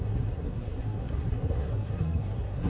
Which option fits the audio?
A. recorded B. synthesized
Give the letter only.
B